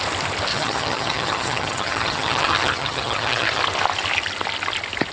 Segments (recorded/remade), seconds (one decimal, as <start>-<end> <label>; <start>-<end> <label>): 0.0-0.5 recorded; 0.5-3.6 remade; 3.6-5.1 recorded